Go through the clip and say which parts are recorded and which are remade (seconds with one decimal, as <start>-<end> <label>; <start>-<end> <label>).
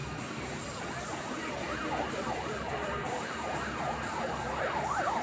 0.0-1.8 recorded; 1.8-5.2 remade